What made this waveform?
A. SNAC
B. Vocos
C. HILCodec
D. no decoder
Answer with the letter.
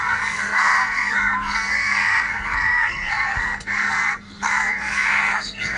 A